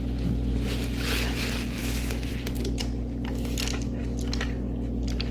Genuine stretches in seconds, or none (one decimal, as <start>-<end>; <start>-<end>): 0.0-1.8; 2.3-5.3